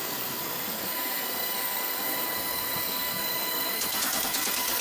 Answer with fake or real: fake